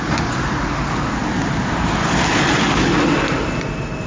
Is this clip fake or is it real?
real